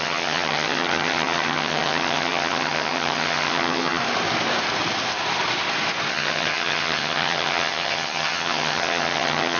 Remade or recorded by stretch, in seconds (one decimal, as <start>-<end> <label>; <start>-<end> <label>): 0.0-4.0 remade; 4.0-6.1 recorded; 6.1-9.6 remade